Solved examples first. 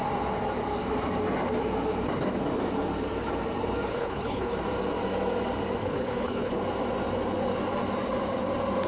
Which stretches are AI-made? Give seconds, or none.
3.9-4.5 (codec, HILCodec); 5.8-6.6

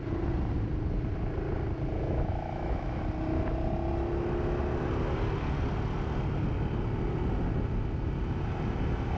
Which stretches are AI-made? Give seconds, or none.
2.0-3.0 (autoencoder, DAC-VAE)

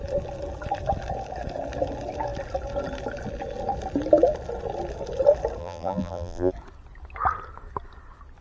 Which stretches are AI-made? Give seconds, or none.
5.6-6.5 (vocoder, BigVGAN v2)

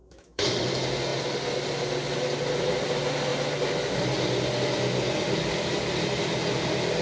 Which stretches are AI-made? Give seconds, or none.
0.0-0.5 (autoencoder, DAC-VAE)

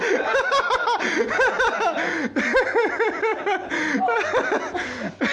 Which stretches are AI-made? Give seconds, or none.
none

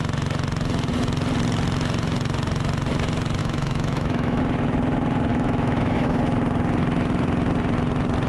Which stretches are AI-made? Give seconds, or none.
3.4-4.4 (autoencoder, DAC-VAE); 5.3-6.2